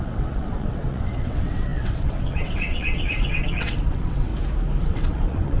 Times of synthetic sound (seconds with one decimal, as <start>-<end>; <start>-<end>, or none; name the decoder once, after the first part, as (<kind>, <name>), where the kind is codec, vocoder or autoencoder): 0.0-4.3 (vocoder, WaveNeXt); 4.8-5.6